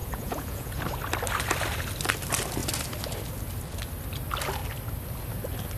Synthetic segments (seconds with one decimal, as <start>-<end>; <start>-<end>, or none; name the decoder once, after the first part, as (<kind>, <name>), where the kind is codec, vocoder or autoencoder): 0.0-0.8 (vocoder, Vocos)